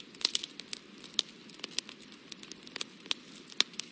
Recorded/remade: recorded